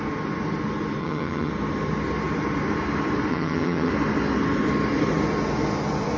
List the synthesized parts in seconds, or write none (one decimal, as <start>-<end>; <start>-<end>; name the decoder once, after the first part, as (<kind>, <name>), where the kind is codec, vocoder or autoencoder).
1.0-1.5 (vocoder, HiFi-GAN); 3.3-3.9